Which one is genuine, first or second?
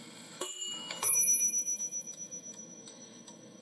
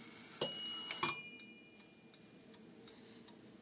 second